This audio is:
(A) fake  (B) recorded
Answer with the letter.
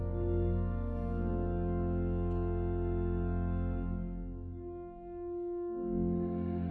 B